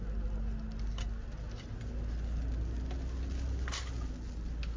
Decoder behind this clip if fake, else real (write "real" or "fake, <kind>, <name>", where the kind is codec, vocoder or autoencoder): real